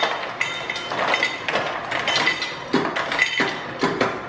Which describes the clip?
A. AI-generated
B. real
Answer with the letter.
B